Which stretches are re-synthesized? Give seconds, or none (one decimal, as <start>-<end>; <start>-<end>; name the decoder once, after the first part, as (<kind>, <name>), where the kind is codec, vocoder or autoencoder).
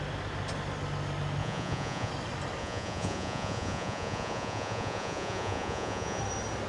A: 1.4-2.1 (vocoder, Vocos); 2.6-6.2